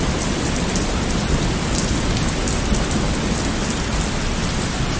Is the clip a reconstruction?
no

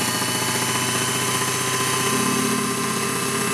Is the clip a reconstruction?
no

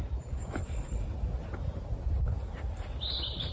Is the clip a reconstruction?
no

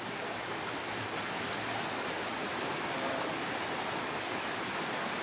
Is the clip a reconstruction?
no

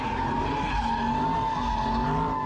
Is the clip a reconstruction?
no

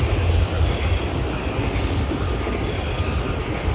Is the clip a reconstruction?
no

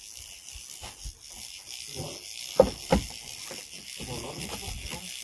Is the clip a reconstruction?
no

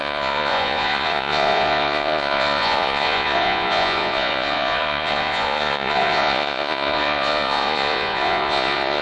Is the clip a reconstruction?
yes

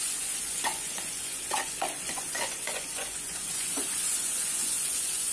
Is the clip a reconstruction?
yes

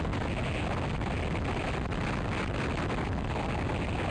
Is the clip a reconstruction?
no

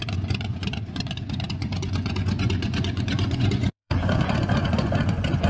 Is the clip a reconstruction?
yes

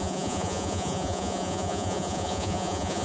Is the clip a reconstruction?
yes